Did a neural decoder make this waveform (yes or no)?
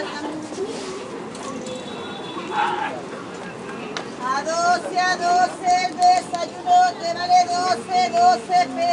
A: no